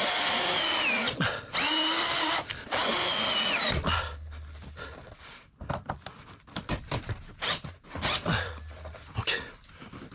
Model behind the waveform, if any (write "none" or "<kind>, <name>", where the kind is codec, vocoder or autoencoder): none